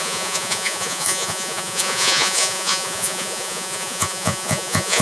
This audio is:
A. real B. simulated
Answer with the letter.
B